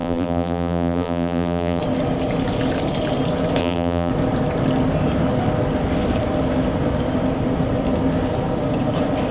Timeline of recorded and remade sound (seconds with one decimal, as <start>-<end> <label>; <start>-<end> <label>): 0.0-1.8 remade; 1.8-3.6 recorded; 3.6-4.1 remade; 4.1-9.3 recorded